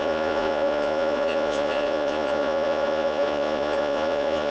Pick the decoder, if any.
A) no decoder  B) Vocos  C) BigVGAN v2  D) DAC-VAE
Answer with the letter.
B